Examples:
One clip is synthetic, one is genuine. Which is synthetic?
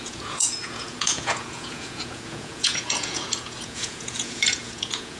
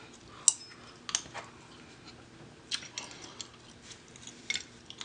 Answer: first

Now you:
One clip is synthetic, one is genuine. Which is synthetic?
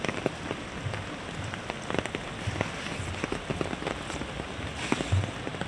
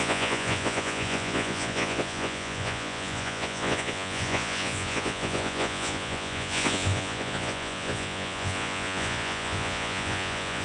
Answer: second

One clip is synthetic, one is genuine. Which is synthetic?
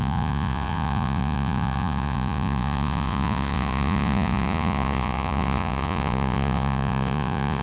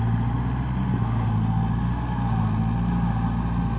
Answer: first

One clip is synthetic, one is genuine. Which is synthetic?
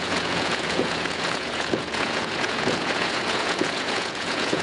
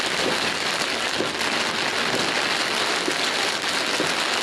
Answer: first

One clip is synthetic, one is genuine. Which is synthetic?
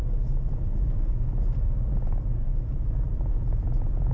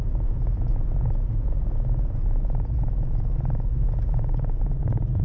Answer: second